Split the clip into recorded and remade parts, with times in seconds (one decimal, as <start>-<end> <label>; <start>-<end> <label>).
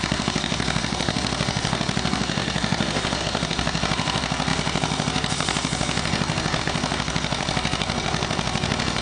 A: 0.0-9.0 remade